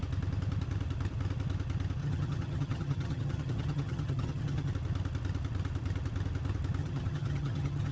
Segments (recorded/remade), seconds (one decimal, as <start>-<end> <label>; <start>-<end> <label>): 0.0-2.0 recorded; 2.0-4.7 remade; 4.7-6.8 recorded; 6.8-7.9 remade